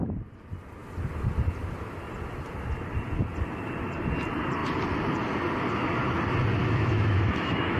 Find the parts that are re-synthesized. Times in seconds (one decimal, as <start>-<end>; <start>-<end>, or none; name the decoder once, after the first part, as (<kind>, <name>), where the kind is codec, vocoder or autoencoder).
6.6-7.8 (autoencoder, DAC-VAE)